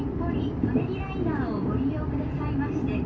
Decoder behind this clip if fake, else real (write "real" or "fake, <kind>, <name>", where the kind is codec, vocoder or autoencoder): real